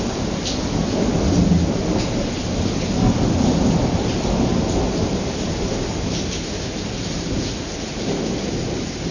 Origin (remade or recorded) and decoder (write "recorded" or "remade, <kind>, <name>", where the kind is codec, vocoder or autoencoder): recorded